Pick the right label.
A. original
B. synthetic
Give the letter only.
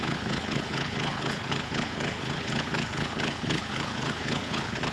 B